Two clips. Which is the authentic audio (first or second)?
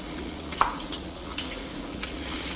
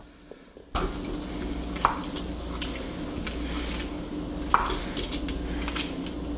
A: second